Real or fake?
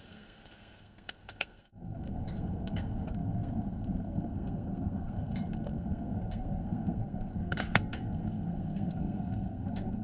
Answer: fake